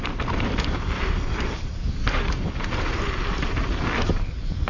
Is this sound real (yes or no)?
no